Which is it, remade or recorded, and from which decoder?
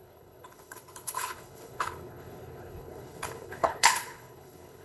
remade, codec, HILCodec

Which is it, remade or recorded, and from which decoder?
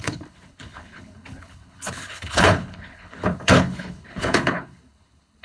remade, codec, HILCodec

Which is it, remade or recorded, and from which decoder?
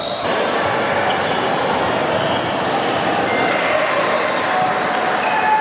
recorded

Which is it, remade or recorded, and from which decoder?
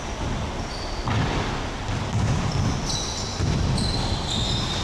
recorded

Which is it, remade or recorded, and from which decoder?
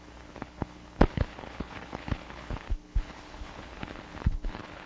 remade, codec, HILCodec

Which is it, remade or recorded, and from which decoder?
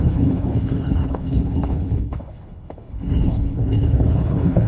remade, codec, HILCodec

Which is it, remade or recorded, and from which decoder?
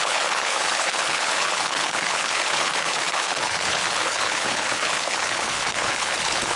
remade, codec, HILCodec